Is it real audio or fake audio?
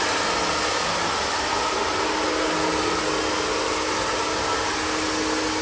real